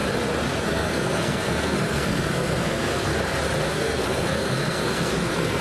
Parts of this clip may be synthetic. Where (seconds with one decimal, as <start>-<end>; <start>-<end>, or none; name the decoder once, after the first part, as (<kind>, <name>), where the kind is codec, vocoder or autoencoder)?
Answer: 0.6-3.1 (codec, SNAC); 3.7-5.6